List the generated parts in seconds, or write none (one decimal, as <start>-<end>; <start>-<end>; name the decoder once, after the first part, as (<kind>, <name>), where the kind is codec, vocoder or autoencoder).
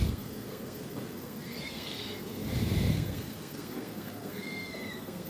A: 0.0-2.4 (codec, SNAC); 2.9-5.3